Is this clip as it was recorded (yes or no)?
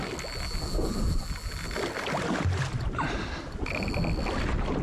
yes